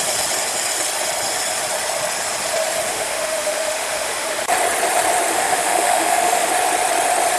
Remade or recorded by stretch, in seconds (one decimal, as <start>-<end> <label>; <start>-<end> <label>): 0.0-2.9 recorded; 2.9-4.4 remade; 4.4-5.3 recorded; 5.3-6.5 remade; 6.5-7.4 recorded